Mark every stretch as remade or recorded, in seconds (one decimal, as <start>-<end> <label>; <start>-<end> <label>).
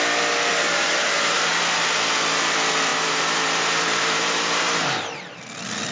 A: 0.0-0.5 recorded; 0.5-1.5 remade; 1.5-2.9 recorded; 2.9-5.4 remade; 5.4-5.9 recorded